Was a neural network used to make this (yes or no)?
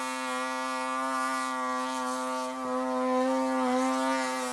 no